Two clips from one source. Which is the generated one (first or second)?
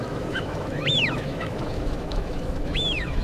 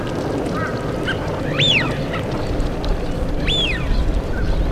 first